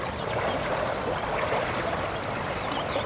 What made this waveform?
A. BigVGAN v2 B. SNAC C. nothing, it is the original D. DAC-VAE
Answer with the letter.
C